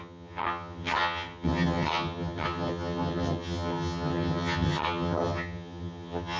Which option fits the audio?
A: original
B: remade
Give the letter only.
B